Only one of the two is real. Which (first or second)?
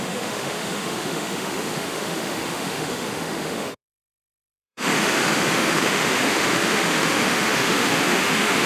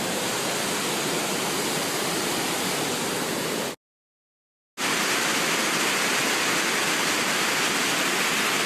second